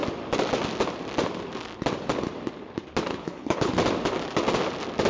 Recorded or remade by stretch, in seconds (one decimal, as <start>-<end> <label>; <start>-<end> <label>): 0.0-3.1 recorded; 3.1-3.7 remade; 3.7-5.1 recorded